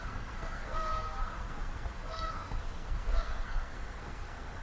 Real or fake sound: fake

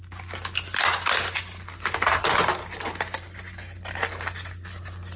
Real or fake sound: real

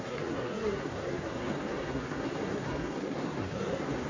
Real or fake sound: fake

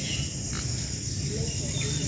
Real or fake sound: real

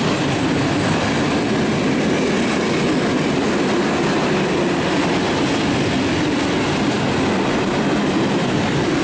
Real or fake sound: real